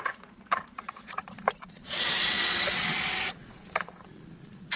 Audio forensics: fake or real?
fake